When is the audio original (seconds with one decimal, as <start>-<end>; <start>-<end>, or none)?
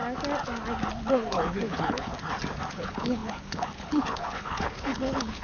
0.0-1.1; 2.1-2.7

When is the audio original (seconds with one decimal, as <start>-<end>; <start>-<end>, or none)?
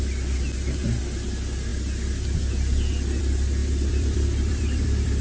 0.0-3.6